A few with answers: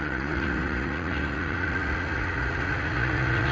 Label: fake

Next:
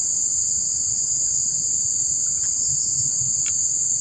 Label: real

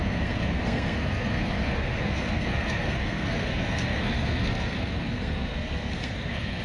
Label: fake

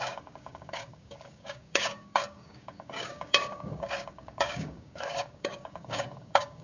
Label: fake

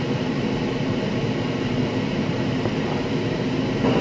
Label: real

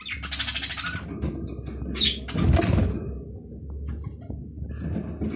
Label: real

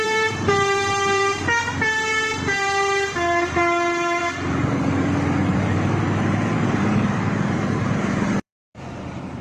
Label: fake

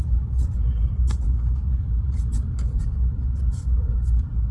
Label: fake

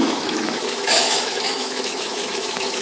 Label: fake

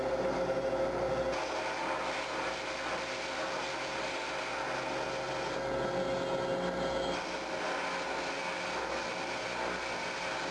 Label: real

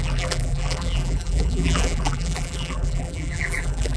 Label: fake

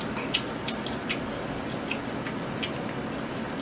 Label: real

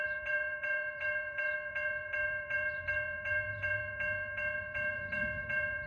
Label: fake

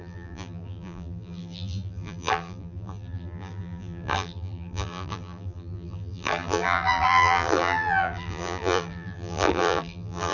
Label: fake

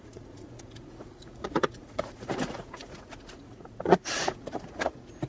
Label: fake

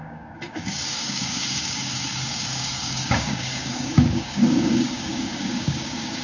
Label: fake